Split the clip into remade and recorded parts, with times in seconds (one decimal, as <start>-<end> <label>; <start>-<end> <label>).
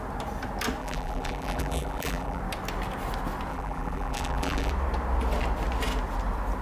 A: 0.0-0.8 recorded; 0.8-2.4 remade; 2.4-3.5 recorded; 3.5-4.7 remade; 4.7-6.6 recorded